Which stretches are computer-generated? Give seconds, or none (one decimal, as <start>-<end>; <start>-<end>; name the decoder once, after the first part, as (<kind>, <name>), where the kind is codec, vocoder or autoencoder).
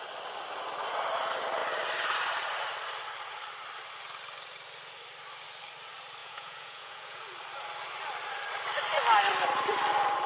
6.2-7.2 (vocoder, Vocos)